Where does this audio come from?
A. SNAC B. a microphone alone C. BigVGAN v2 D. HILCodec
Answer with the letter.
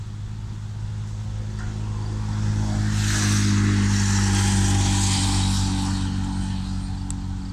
B